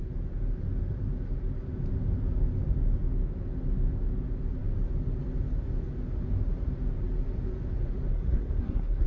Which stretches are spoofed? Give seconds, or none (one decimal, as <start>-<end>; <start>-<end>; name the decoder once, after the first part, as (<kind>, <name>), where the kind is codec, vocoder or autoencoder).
8.1-9.1 (codec, SNAC)